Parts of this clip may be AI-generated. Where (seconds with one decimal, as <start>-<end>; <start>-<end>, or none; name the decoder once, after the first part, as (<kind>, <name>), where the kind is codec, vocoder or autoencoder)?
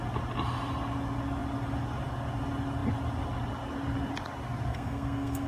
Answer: 4.7-5.5 (codec, SNAC)